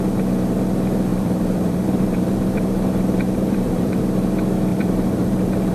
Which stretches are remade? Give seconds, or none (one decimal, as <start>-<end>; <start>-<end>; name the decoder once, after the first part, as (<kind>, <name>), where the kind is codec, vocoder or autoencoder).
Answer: 1.1-4.0 (vocoder, BigVGAN v2); 4.7-5.7